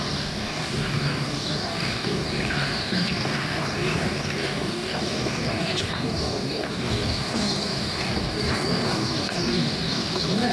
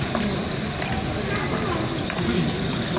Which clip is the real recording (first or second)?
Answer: second